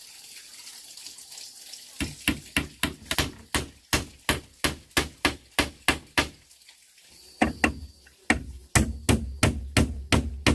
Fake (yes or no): no